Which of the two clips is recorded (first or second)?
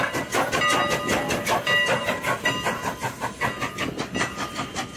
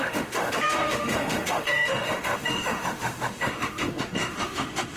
first